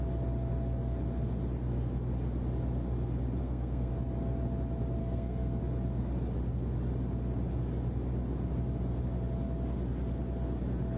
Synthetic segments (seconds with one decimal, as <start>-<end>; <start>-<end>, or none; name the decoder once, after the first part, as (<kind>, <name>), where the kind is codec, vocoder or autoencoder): 3.4-3.9 (codec, SNAC); 5.0-5.6